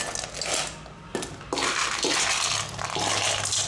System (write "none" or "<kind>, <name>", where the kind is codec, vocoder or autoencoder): none